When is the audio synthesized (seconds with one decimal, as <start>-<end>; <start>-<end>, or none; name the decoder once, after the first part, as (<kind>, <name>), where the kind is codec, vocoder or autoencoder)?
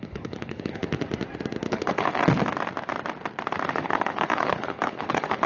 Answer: 0.0-0.8 (codec, HILCodec); 1.7-2.2; 3.7-5.5